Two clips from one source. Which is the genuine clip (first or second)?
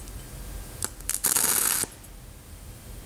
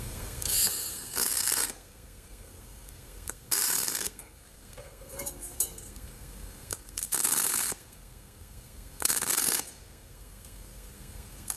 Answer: first